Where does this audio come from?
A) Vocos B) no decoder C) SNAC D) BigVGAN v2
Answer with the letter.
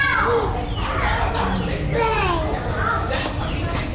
B